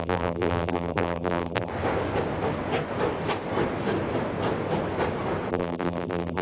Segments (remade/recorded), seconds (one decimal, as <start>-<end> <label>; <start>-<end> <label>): 0.0-1.7 remade; 1.7-5.5 recorded; 5.5-6.4 remade

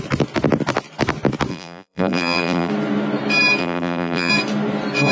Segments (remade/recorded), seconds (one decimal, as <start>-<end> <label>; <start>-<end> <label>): 0.0-1.5 recorded; 1.5-2.7 remade; 2.7-3.6 recorded; 3.6-4.3 remade; 4.3-5.1 recorded

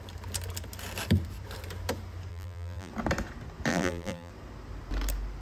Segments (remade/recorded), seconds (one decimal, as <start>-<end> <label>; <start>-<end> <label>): 0.0-2.3 recorded; 2.3-2.9 remade; 2.9-3.7 recorded; 3.7-4.3 remade; 4.3-5.4 recorded

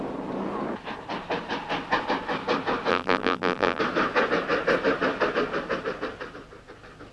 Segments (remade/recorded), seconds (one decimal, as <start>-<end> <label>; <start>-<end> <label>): 0.0-2.9 recorded; 2.9-3.8 remade; 3.8-7.1 recorded